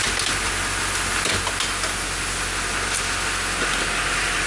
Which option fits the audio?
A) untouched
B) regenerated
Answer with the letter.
A